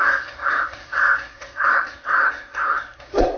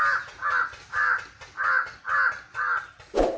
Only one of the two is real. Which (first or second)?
second